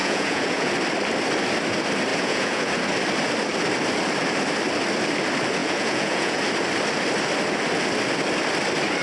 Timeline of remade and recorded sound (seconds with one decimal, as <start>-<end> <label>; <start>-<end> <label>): 0.0-0.7 remade; 0.7-2.1 recorded; 2.1-2.7 remade; 2.7-5.6 recorded; 5.6-6.4 remade; 6.4-9.0 recorded